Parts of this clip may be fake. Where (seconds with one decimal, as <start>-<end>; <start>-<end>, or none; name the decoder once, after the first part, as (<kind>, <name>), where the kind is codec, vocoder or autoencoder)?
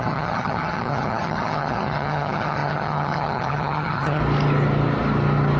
0.0-4.2 (vocoder, HiFi-GAN)